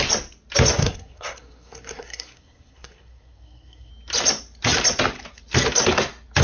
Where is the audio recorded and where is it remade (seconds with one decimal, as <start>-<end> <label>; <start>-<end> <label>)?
0.0-0.8 recorded; 0.8-3.9 remade; 3.9-6.4 recorded

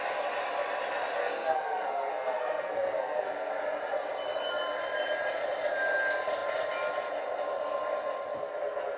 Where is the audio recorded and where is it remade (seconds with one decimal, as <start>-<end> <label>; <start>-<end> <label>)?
0.0-1.2 recorded; 1.2-3.5 remade; 3.5-9.0 recorded